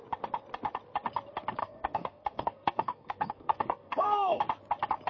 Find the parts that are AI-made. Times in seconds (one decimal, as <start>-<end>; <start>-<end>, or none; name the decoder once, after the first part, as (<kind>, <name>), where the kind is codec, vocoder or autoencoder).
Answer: 1.6-4.4 (codec, SNAC)